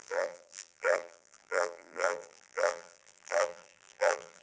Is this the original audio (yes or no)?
no